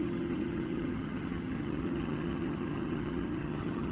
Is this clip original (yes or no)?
no